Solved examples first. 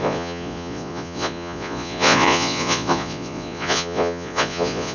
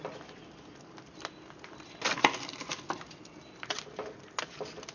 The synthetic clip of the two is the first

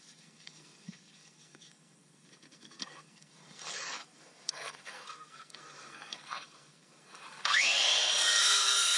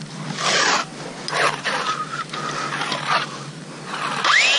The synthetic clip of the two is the first